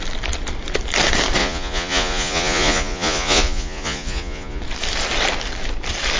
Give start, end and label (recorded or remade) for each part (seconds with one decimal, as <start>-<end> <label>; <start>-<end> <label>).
0.0-1.4 recorded; 1.4-4.6 remade; 4.6-6.2 recorded